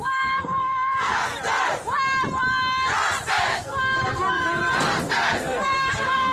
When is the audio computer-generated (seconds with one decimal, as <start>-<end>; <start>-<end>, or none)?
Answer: 0.0-1.3; 3.3-4.6; 5.1-6.3